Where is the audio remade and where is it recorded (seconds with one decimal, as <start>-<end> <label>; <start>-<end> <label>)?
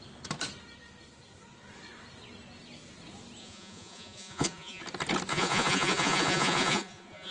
0.0-3.4 recorded; 3.4-4.8 remade; 4.8-5.3 recorded; 5.3-7.3 remade